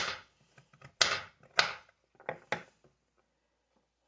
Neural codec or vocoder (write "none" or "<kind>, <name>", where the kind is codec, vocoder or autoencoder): none